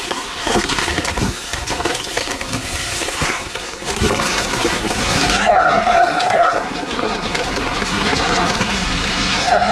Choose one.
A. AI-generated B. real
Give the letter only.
A